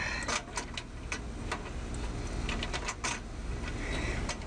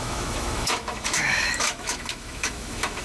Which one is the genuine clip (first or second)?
first